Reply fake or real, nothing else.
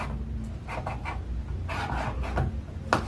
real